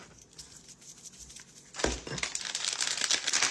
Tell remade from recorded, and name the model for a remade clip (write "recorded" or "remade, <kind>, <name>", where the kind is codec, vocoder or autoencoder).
recorded